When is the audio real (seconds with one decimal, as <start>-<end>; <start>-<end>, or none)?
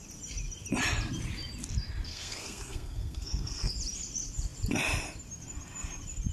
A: 0.0-2.1; 3.7-6.3